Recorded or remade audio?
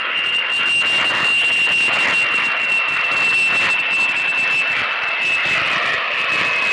recorded